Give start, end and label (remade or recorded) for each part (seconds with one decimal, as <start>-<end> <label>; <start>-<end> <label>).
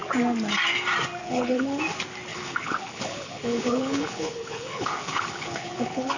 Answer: 0.0-1.2 recorded; 1.2-1.8 remade; 1.8-2.3 recorded; 2.3-6.2 remade